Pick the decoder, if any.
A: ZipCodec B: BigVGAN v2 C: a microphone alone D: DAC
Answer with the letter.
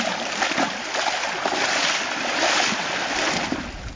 C